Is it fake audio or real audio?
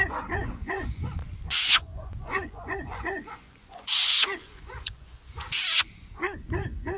fake